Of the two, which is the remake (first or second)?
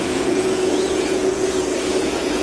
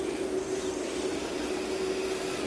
first